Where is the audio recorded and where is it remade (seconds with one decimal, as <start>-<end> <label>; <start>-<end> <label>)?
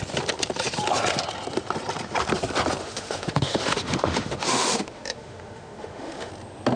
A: 0.0-2.8 recorded; 2.8-6.3 remade; 6.3-6.8 recorded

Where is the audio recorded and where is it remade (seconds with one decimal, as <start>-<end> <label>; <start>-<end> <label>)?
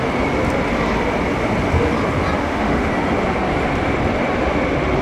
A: 0.0-2.4 recorded; 2.4-2.9 remade; 2.9-5.0 recorded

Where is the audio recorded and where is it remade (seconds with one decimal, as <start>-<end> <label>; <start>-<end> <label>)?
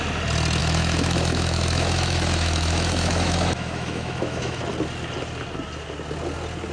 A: 0.0-0.6 recorded; 0.6-4.6 remade; 4.6-6.7 recorded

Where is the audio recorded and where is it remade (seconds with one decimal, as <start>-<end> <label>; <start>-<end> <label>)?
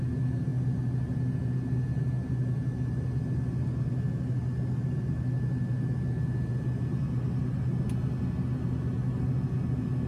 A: 0.0-10.1 recorded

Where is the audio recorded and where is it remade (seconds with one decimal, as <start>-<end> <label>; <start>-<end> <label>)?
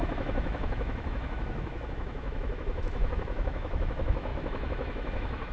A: 0.0-5.5 remade